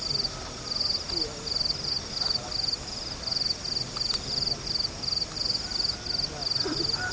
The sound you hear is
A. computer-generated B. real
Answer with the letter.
B